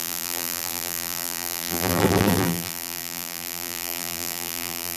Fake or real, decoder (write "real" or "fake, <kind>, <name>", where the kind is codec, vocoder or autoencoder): fake, vocoder, BigVGAN v2